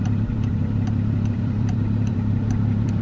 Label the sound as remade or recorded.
remade